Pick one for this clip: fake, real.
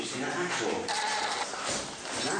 real